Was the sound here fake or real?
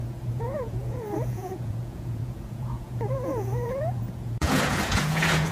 fake